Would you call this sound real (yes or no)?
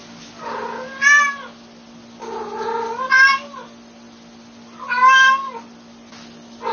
yes